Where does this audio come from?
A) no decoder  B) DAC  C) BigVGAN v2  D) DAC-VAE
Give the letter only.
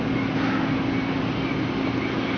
A